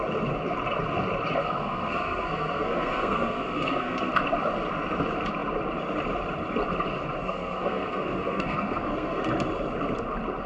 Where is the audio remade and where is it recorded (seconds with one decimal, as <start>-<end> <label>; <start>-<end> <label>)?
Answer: 0.0-1.4 recorded; 1.4-4.1 remade; 4.1-7.2 recorded; 7.2-9.2 remade; 9.2-10.5 recorded